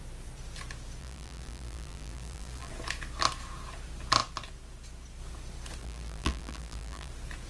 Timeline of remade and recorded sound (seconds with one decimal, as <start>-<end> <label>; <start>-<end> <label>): 0.0-1.0 recorded; 1.0-2.7 remade; 2.7-5.8 recorded; 5.8-7.1 remade; 7.1-7.5 recorded